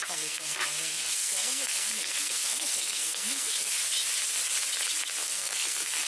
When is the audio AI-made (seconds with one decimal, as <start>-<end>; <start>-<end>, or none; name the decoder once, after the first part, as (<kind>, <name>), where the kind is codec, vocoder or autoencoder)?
0.0-3.7 (codec, SNAC); 5.2-6.1